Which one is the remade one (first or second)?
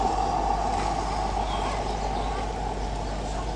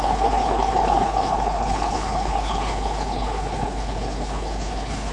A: second